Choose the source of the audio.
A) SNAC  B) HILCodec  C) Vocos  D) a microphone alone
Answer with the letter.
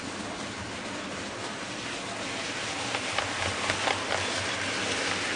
D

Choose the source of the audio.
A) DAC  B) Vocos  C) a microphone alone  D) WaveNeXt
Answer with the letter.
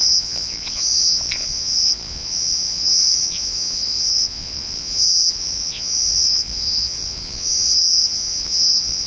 B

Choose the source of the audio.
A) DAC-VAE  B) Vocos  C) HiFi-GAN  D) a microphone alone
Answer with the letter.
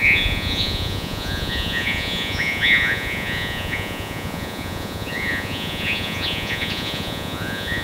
B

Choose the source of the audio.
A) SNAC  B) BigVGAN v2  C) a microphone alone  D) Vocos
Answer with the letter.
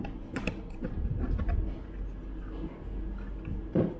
C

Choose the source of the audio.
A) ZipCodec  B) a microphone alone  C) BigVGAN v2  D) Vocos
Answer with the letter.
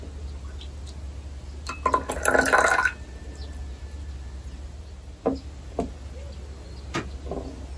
B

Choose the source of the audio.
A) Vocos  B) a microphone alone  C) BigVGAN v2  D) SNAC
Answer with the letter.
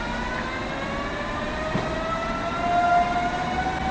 B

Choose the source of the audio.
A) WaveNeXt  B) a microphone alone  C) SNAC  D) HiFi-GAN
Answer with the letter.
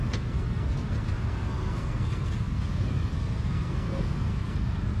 C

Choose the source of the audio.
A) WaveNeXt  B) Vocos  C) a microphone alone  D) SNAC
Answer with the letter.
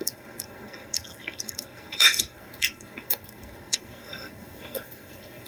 D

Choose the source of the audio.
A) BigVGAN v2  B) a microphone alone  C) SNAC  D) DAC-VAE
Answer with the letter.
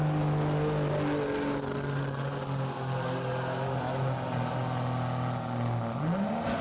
B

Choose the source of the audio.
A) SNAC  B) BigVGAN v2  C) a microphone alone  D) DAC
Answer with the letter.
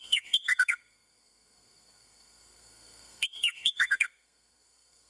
A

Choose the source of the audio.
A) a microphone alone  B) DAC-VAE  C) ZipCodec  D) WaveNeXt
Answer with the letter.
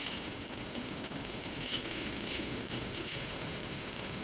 B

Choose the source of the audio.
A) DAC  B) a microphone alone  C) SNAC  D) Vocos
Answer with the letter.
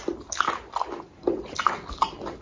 B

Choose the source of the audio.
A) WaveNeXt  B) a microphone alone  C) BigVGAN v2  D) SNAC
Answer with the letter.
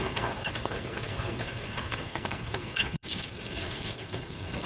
D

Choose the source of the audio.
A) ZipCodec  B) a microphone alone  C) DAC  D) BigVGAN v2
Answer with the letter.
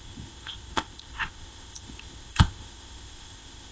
A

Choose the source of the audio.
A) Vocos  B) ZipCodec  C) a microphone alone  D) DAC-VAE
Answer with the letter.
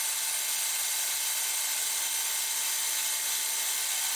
C